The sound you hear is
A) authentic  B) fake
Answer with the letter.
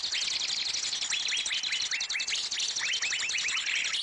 A